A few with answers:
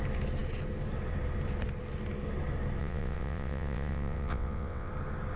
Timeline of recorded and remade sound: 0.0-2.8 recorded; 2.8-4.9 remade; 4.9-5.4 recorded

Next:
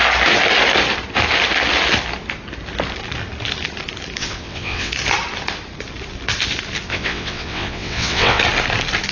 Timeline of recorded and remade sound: 0.0-4.2 recorded; 4.2-4.9 remade; 4.9-6.9 recorded; 6.9-8.4 remade; 8.4-9.1 recorded